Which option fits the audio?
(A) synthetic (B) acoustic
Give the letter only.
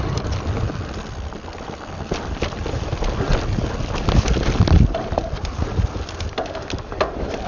B